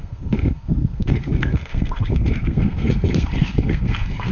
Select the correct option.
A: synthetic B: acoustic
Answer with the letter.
A